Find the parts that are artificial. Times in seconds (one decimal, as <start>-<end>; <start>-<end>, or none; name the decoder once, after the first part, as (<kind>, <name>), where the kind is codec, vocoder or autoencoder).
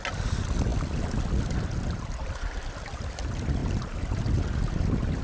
none